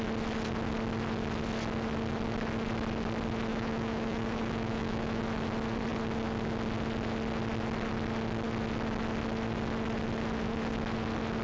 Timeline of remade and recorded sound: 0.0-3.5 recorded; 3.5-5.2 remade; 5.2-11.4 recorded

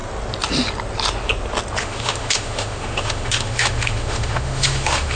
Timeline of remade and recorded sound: 0.0-1.8 recorded; 1.8-5.2 remade

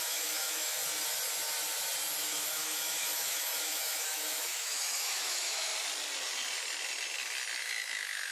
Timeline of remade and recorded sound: 0.0-0.7 remade; 0.7-2.2 recorded; 2.2-5.7 remade; 5.7-7.6 recorded; 7.6-8.3 remade